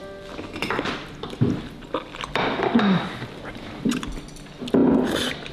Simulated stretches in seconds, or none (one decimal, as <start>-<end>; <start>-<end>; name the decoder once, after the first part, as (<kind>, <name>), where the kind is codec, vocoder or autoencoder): 0.6-3.9 (vocoder, BigVGAN v2)